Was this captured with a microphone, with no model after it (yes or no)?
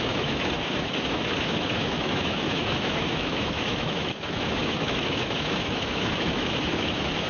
no